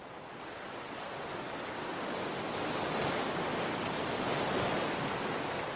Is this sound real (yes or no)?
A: yes